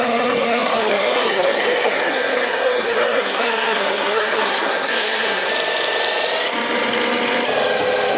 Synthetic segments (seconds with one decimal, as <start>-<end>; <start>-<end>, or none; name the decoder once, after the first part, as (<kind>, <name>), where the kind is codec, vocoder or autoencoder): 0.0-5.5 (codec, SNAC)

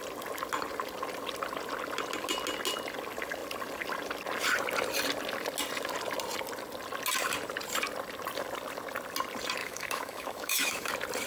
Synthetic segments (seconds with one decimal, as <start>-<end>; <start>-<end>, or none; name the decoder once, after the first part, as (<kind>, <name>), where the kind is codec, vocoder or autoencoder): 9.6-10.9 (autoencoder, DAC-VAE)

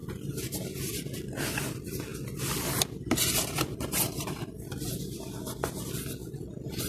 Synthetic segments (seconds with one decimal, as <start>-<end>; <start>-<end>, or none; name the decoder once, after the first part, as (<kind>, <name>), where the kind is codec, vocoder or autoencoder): 6.2-6.9 (vocoder, BigVGAN v2)

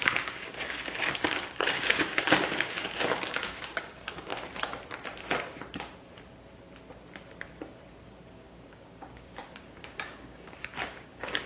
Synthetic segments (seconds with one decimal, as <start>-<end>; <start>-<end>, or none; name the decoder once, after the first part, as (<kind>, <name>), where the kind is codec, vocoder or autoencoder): 0.0-4.3 (codec, DAC); 8.3-11.5

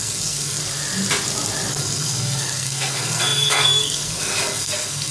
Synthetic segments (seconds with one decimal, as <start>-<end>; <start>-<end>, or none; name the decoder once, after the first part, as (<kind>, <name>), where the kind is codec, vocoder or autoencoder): 0.0-0.6 (codec, SNAC); 1.7-5.1

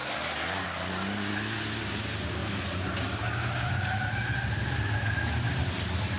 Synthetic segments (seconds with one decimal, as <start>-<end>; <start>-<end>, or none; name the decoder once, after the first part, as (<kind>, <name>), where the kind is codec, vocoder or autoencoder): none

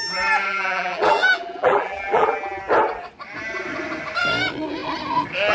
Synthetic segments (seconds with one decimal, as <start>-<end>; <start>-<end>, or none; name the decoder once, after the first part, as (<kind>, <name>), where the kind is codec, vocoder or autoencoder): 0.5-2.6 (vocoder, BigVGAN v2)

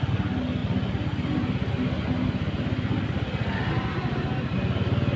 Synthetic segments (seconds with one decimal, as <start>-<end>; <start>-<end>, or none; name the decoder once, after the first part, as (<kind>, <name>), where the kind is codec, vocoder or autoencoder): none